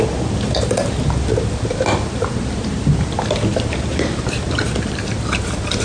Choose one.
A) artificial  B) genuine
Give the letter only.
B